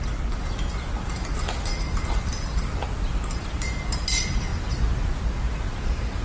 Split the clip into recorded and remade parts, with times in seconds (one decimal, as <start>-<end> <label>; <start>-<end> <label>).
0.0-6.2 recorded